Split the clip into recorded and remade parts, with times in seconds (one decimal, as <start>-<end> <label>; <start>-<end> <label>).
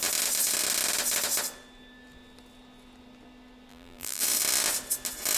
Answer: 0.0-3.7 recorded; 3.7-4.2 remade; 4.2-5.4 recorded